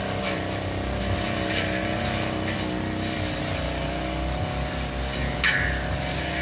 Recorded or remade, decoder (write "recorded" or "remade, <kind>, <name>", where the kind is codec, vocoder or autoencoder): recorded